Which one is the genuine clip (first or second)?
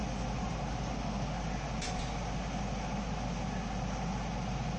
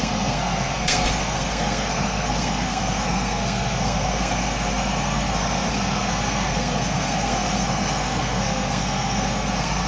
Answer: first